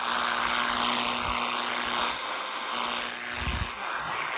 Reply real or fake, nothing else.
real